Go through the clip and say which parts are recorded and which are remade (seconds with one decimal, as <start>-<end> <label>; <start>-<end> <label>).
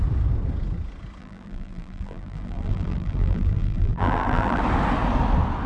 0.0-1.2 recorded; 1.2-4.6 remade; 4.6-5.7 recorded